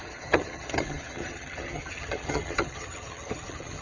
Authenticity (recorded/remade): remade